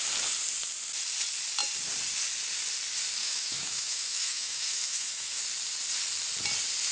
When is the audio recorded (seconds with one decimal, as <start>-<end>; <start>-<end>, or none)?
0.0-3.2; 5.4-6.9